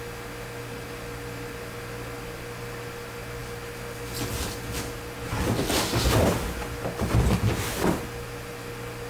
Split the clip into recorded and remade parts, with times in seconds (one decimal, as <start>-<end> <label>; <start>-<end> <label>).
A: 0.0-9.1 recorded